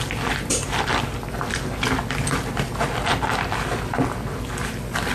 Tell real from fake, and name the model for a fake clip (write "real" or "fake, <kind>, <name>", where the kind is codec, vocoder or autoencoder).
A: real